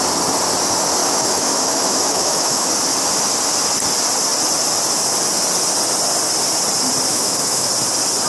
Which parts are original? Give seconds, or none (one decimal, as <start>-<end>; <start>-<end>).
0.0-1.0; 2.7-7.1; 7.7-8.3